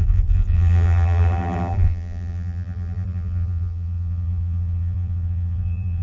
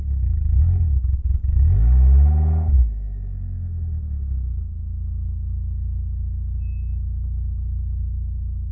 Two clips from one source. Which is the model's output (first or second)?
first